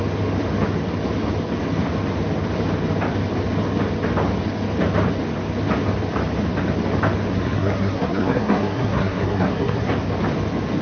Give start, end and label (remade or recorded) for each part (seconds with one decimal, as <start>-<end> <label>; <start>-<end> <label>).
0.0-7.3 recorded; 7.3-9.9 remade; 9.9-10.8 recorded